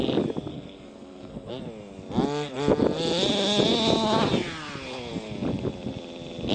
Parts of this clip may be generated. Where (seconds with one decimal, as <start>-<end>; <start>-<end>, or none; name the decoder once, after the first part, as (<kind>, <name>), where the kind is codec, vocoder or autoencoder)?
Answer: 0.5-1.5 (codec, SNAC)